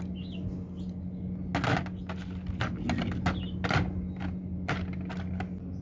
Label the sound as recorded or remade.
recorded